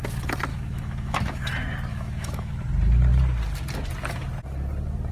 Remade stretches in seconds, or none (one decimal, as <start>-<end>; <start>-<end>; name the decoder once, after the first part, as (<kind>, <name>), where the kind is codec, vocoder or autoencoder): 0.5-1.5 (autoencoder, DAC-VAE); 1.9-2.5